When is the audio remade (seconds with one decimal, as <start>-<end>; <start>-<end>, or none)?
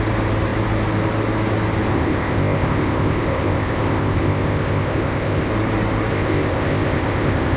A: 1.9-5.5; 6.1-7.6